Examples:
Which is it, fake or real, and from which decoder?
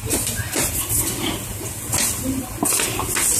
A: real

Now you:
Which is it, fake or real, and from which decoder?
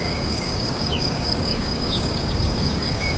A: fake, codec, DAC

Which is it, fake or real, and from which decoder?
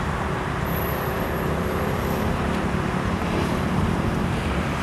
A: fake, vocoder, BigVGAN v2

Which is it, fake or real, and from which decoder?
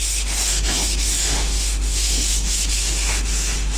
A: fake, autoencoder, DAC-VAE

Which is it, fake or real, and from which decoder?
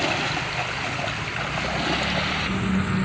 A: real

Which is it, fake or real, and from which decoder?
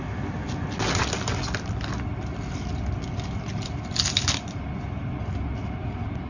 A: real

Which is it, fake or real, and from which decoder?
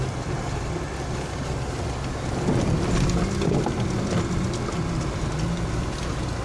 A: real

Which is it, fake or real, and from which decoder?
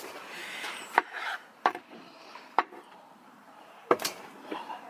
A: fake, vocoder, BigVGAN v2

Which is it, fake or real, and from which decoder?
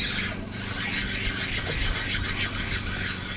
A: real